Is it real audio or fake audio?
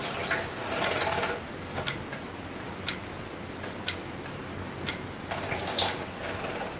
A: real